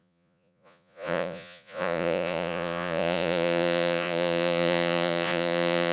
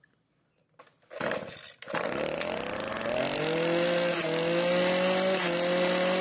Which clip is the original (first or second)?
second